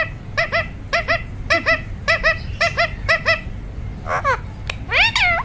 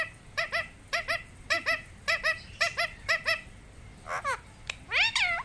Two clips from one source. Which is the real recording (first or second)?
first